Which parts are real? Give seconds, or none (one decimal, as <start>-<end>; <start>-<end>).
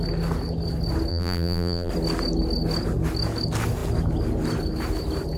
0.0-1.1; 1.9-5.4